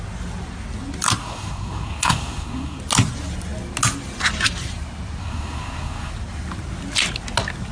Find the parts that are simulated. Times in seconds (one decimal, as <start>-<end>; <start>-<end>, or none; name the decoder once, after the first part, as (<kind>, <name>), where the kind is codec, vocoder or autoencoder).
1.2-2.8 (codec, SNAC); 5.2-6.1